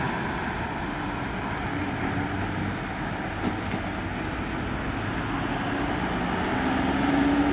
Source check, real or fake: real